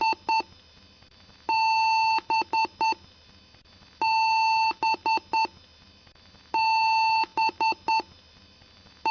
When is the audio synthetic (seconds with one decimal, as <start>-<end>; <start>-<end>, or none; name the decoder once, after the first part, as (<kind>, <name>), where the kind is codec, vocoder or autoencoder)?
none

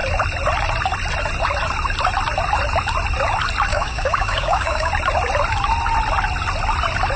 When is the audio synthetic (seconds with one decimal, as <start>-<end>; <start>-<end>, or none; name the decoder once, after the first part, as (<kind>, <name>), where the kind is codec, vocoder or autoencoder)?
3.7-4.9 (codec, DAC)

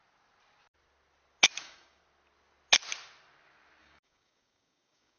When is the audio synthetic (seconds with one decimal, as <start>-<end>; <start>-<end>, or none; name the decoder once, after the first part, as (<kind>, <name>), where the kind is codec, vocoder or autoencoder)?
1.6-2.0 (codec, DAC); 3.8-5.2

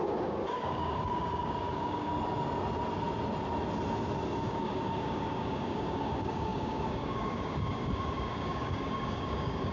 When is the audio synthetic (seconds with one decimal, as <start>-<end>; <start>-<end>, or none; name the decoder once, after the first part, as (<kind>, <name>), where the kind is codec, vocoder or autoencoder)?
0.0-2.1 (codec, DAC); 4.4-9.7

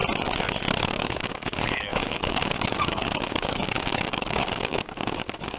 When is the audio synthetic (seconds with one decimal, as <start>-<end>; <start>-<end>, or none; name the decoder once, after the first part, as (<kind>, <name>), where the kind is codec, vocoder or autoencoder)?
0.8-5.6 (codec, DAC)

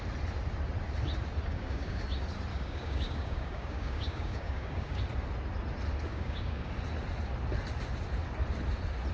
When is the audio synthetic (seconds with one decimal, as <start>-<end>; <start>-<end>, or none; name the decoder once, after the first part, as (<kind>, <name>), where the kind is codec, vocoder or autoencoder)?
1.5-2.0 (codec, DAC); 2.5-5.0; 6.1-6.7

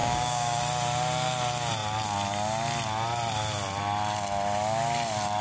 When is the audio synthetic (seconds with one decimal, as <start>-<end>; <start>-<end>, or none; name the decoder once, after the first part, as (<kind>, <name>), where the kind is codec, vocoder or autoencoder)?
0.0-0.6 (codec, DAC)